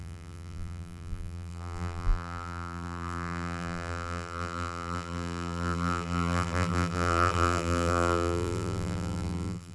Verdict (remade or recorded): remade